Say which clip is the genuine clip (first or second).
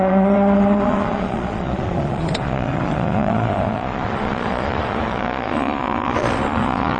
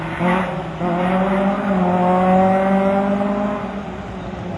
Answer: second